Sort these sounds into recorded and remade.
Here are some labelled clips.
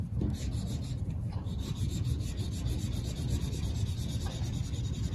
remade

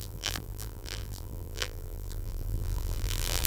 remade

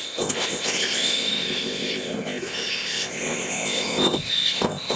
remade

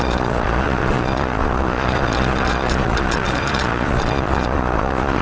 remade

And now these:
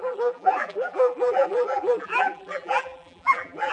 remade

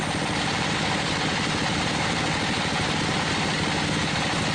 recorded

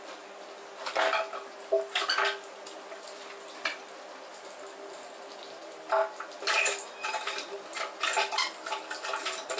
recorded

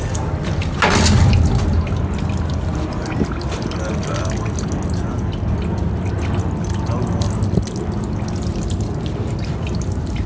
recorded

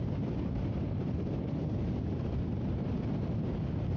recorded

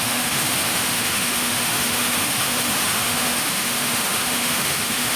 remade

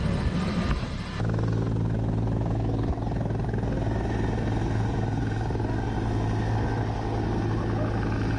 recorded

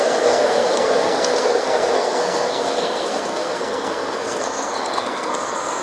remade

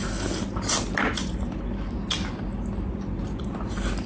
recorded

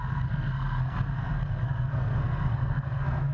remade